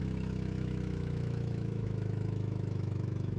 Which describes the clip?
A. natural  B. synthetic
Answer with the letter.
B